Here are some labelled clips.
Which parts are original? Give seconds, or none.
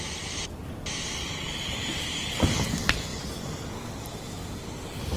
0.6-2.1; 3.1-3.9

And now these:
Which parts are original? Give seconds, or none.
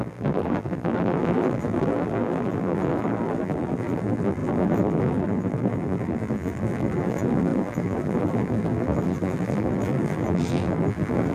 none